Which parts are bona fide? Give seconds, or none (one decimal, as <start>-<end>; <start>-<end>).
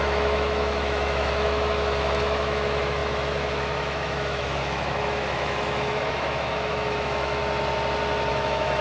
7.4-8.3